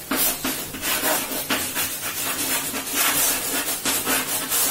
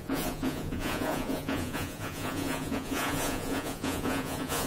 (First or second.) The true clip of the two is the first